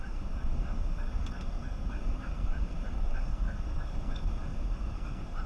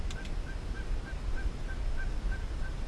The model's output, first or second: first